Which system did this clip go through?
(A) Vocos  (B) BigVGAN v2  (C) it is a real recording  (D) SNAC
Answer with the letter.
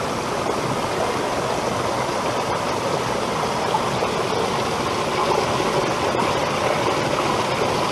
C